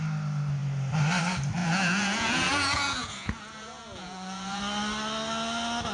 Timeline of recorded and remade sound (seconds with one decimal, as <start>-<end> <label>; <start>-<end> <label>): 0.0-1.6 recorded; 1.6-4.6 remade; 4.6-5.9 recorded

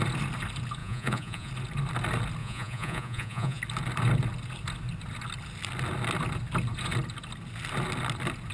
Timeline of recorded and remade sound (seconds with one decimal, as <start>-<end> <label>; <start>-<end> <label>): 0.0-0.8 recorded; 0.8-1.5 remade; 1.5-2.4 recorded; 2.4-3.6 remade; 3.6-8.5 recorded